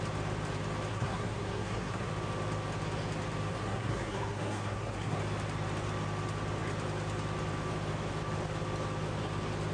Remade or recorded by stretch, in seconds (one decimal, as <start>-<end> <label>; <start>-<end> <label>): 0.0-0.9 recorded; 0.9-2.1 remade; 2.1-3.5 recorded; 3.5-5.2 remade; 5.2-9.7 recorded